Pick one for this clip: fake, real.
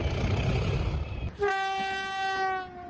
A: real